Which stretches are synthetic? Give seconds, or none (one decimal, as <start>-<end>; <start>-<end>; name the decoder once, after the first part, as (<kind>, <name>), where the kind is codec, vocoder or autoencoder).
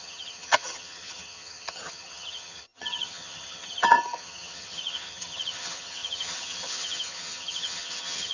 0.0-8.3 (vocoder, HiFi-GAN)